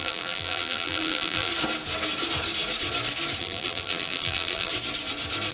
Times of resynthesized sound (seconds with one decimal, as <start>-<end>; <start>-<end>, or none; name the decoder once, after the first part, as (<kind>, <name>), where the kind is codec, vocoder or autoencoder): 0.0-1.5 (vocoder, BigVGAN v2); 3.4-4.7

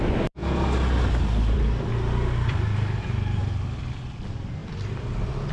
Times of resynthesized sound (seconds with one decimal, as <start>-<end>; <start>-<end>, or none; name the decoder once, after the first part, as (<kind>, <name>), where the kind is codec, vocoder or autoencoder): 0.0-0.4 (vocoder, BigVGAN v2); 1.4-3.4; 3.9-4.6